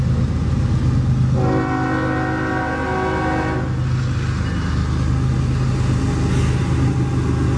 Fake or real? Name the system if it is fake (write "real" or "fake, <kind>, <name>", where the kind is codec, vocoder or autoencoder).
real